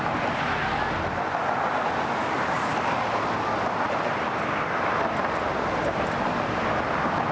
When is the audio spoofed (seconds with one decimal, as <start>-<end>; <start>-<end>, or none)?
none